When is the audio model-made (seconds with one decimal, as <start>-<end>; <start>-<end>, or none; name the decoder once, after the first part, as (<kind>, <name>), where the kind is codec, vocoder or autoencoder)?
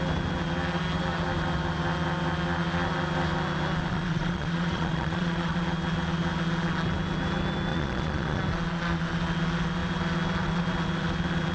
3.9-5.6 (vocoder, Vocos); 7.7-8.4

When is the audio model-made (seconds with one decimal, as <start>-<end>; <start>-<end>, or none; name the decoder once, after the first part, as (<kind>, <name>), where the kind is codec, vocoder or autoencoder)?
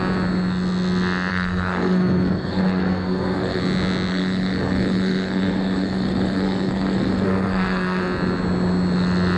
1.3-3.6 (codec, SNAC); 4.1-8.0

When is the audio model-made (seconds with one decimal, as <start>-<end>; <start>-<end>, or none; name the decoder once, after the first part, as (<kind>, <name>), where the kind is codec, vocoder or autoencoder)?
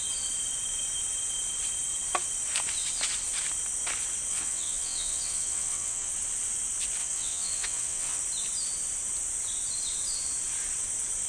4.3-6.1 (vocoder, WaveNeXt); 7.0-8.2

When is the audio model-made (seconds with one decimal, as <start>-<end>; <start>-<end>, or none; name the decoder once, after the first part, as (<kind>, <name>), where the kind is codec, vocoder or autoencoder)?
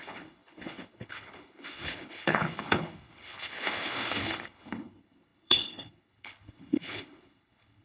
0.0-7.8 (codec, HILCodec)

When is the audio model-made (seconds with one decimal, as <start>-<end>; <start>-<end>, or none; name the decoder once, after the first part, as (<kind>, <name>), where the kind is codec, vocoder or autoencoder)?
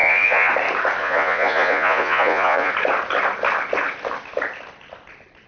0.0-0.5 (vocoder, Vocos); 1.0-2.7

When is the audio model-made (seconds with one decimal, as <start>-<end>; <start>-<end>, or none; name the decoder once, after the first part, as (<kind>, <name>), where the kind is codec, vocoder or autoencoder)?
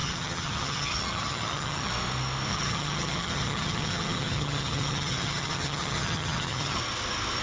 0.0-1.9 (vocoder, HiFi-GAN); 2.5-6.8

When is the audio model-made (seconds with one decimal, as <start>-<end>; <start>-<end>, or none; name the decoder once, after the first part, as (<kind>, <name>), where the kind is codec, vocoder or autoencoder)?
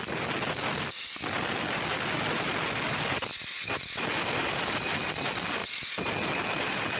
5.6-6.1 (vocoder, BigVGAN v2)